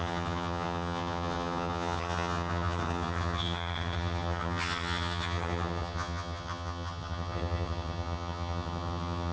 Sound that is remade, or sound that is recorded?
remade